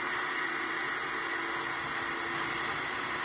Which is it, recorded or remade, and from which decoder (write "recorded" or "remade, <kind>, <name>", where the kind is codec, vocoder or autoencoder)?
recorded